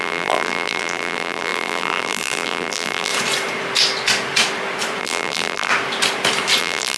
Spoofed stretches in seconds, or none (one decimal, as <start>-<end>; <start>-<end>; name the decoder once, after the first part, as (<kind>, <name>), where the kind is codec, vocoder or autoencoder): 0.0-3.1 (vocoder, BigVGAN v2); 5.0-5.7; 6.6-7.0